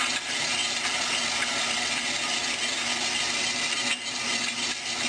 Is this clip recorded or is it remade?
recorded